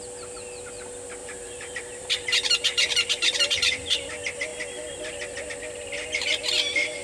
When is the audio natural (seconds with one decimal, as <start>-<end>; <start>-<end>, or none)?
0.0-1.2; 4.1-7.0